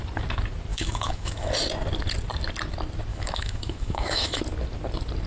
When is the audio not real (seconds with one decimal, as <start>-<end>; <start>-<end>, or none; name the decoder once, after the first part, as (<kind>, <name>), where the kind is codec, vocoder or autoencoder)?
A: 0.7-1.5 (autoencoder, DAC-VAE); 3.1-4.4